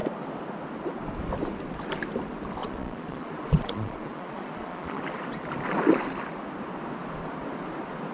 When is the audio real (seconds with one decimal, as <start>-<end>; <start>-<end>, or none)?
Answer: 0.0-2.6; 5.0-8.1